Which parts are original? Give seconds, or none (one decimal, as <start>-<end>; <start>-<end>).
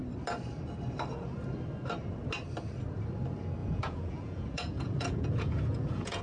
0.0-3.6